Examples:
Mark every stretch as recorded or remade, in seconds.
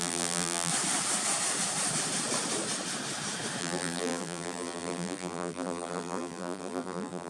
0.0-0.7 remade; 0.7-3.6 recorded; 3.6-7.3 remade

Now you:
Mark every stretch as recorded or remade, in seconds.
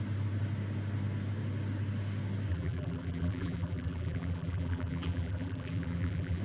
0.0-2.5 recorded; 2.5-6.4 remade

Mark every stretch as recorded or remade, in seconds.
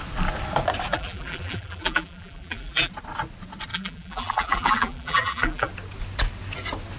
0.0-0.9 recorded; 0.9-2.9 remade; 2.9-3.7 recorded; 3.7-5.7 remade; 5.7-7.0 recorded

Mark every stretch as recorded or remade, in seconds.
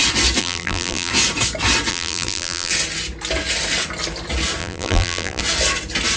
0.0-0.4 recorded; 0.4-1.1 remade; 1.1-1.9 recorded; 1.9-2.7 remade; 2.7-4.6 recorded; 4.6-5.4 remade; 5.4-6.2 recorded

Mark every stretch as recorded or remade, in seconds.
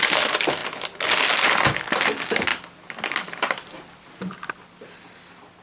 0.0-5.6 recorded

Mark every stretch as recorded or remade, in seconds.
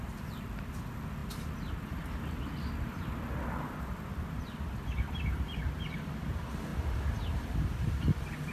0.0-1.2 recorded; 1.2-5.6 remade; 5.6-8.5 recorded